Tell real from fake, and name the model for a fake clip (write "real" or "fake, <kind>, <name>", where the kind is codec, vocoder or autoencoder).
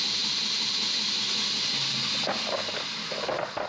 real